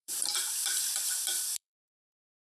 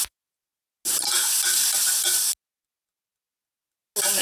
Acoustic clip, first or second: second